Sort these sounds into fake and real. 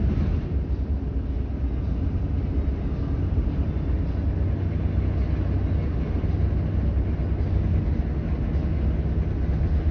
real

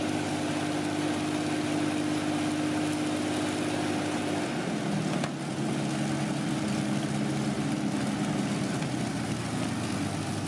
real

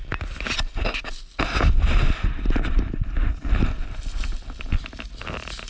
real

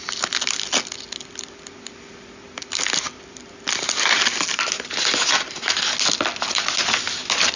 real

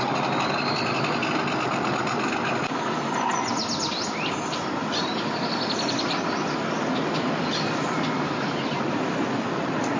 real